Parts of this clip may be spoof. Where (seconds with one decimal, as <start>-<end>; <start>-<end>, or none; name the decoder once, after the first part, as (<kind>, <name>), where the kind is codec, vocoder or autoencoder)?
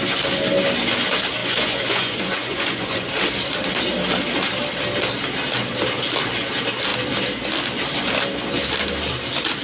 1.4-3.1 (vocoder, Vocos)